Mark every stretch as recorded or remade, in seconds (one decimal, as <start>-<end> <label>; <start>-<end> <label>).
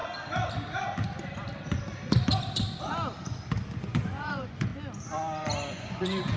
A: 0.0-3.8 recorded; 3.8-4.7 remade; 4.7-5.7 recorded; 5.7-6.4 remade